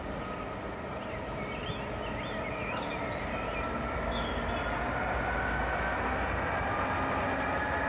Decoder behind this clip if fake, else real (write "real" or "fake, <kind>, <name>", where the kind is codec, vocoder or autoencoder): real